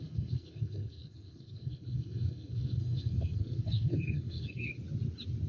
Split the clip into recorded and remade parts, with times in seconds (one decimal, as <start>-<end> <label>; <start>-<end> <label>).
0.0-4.7 remade; 4.7-5.5 recorded